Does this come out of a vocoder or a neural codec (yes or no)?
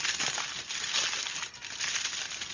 no